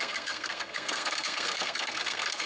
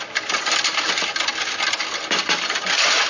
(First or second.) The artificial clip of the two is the first